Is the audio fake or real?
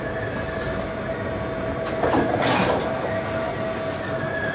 real